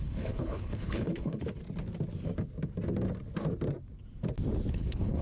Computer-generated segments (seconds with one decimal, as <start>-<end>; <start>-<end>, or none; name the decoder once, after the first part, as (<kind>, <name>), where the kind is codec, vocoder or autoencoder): 0.0-1.6 (codec, HILCodec); 4.7-5.2